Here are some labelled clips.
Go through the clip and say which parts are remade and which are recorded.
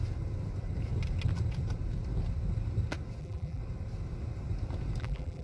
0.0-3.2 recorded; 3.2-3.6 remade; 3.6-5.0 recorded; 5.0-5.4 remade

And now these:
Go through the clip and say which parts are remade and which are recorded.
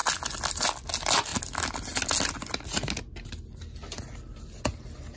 0.0-5.2 recorded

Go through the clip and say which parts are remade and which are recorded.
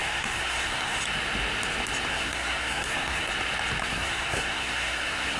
0.0-1.0 remade; 1.0-2.1 recorded; 2.1-3.3 remade; 3.3-3.8 recorded; 3.8-5.4 remade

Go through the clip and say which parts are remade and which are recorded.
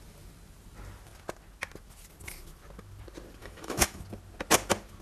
0.0-3.4 recorded; 3.4-4.0 remade; 4.0-5.0 recorded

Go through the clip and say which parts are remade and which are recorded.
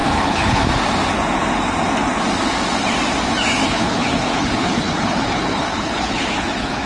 0.0-0.6 remade; 0.6-3.6 recorded; 3.6-6.9 remade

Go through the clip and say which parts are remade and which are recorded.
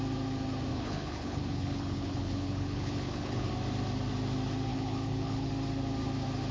0.0-0.7 recorded; 0.7-3.5 remade; 3.5-4.7 recorded; 4.7-5.5 remade; 5.5-6.5 recorded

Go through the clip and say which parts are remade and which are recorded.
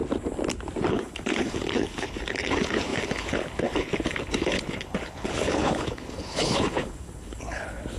0.0-0.9 recorded; 0.9-8.0 remade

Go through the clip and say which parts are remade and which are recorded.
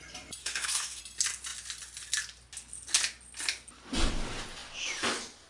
0.0-0.4 recorded; 0.4-1.0 remade; 1.0-5.5 recorded